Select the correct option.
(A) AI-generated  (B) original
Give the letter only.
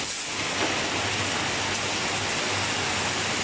B